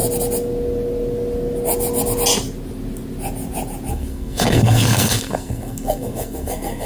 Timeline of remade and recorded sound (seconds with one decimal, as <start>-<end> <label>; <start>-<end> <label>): 0.0-3.9 recorded; 3.9-6.9 remade